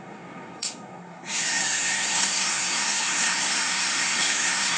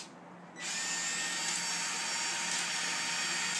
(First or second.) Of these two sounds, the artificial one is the first